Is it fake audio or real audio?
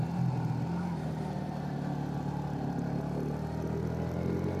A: real